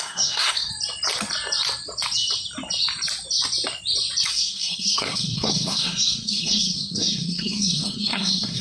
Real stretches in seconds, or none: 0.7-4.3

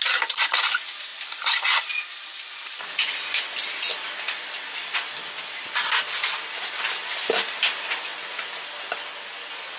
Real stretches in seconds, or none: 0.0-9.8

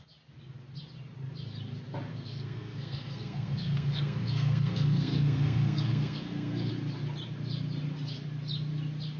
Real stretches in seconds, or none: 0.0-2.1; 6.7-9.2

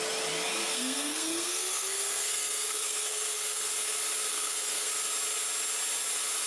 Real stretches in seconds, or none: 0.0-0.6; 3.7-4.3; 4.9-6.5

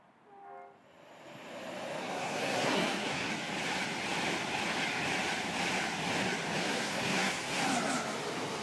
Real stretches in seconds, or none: 0.0-2.0; 3.3-6.6; 7.6-8.6

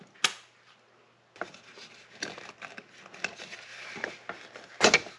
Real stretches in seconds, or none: 0.0-5.2

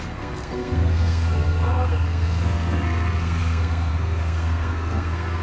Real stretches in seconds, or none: none